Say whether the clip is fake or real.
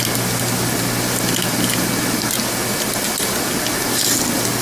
real